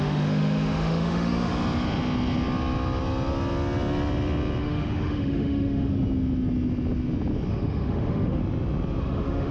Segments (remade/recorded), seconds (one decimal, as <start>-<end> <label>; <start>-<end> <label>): 0.0-1.5 remade; 1.5-4.6 recorded; 4.6-5.9 remade; 5.9-7.5 recorded; 7.5-8.4 remade; 8.4-9.0 recorded; 9.0-9.5 remade